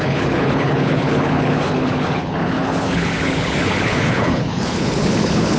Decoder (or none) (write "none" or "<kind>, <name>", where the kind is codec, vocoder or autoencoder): codec, HILCodec